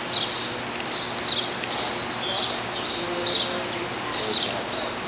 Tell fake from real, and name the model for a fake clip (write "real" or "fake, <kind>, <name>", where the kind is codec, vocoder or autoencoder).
real